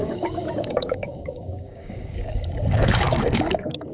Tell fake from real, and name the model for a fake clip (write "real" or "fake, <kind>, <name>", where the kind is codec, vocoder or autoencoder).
fake, codec, DAC